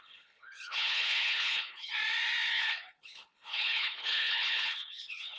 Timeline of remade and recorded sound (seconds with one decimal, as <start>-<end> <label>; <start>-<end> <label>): 0.0-1.9 remade; 1.9-2.5 recorded; 2.5-5.4 remade